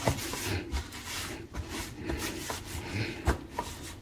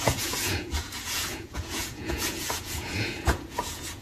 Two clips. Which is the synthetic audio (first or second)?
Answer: second